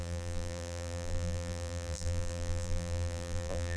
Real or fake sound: fake